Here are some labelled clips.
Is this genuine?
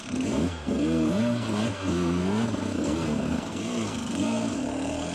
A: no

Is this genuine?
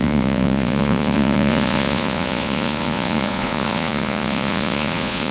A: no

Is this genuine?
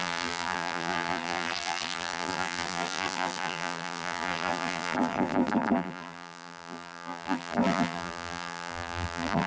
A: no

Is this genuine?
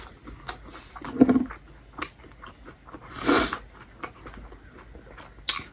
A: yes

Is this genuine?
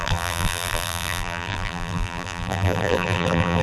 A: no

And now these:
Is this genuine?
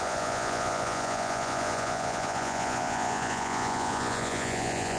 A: no